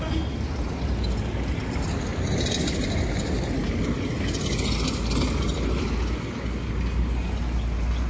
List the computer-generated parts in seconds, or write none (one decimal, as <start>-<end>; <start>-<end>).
none